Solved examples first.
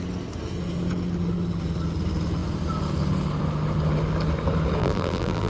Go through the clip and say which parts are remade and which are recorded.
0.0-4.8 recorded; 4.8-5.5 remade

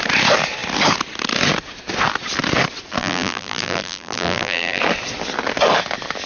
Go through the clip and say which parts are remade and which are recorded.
0.0-3.0 recorded; 3.0-4.8 remade; 4.8-6.3 recorded

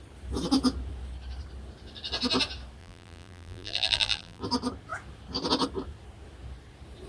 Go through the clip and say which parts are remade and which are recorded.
0.0-2.8 recorded; 2.8-4.4 remade; 4.4-7.1 recorded

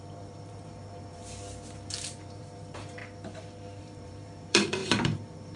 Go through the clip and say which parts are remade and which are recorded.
0.0-1.2 remade; 1.2-1.9 recorded; 1.9-3.0 remade; 3.0-3.8 recorded; 3.8-5.6 remade